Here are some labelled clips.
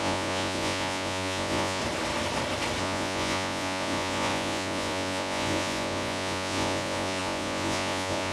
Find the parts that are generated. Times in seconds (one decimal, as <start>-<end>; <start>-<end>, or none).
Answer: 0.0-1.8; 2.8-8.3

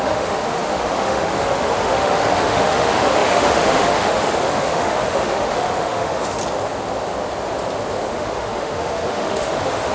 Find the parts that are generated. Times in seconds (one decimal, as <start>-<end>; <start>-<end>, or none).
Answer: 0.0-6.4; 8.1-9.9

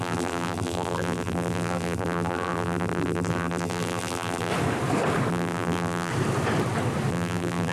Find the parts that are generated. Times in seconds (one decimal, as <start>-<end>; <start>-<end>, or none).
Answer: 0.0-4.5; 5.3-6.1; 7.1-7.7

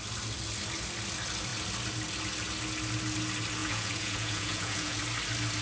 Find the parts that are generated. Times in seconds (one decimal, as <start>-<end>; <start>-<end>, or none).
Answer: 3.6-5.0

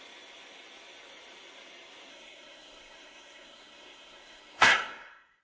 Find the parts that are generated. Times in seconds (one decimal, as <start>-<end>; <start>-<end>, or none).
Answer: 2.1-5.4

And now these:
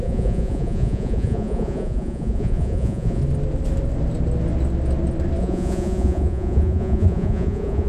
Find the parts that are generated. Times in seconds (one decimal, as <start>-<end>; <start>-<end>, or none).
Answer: 0.0-3.2; 5.4-7.9

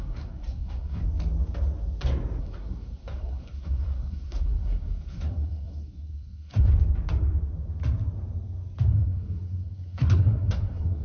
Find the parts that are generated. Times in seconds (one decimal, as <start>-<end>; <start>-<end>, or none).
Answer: 0.0-1.0; 2.4-6.7; 8.9-11.0